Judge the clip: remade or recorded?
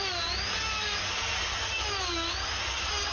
recorded